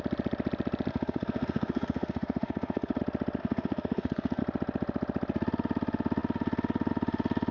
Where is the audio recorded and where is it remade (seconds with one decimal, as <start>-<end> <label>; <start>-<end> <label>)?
0.0-0.9 recorded; 0.9-3.0 remade; 3.0-3.4 recorded; 3.4-4.4 remade; 4.4-7.5 recorded